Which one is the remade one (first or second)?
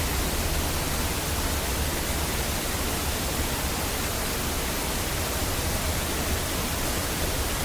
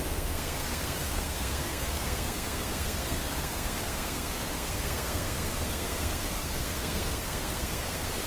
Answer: second